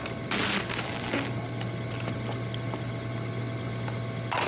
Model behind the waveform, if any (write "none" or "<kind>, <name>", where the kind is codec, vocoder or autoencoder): none